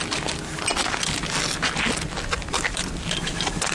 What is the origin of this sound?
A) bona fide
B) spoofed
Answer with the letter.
A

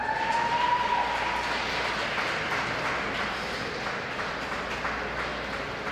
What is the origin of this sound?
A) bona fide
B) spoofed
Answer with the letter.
A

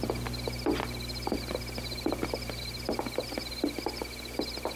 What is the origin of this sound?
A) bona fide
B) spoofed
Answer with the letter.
A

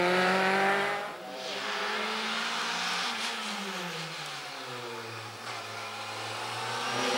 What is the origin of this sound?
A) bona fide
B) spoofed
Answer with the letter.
A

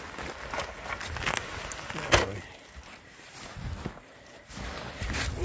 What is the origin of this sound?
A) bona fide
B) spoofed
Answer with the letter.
A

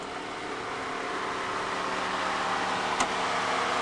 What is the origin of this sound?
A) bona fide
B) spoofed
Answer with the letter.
A